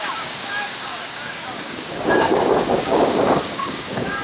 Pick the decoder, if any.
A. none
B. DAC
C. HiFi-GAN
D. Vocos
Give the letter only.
B